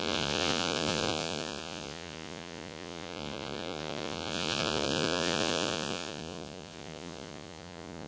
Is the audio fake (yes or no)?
yes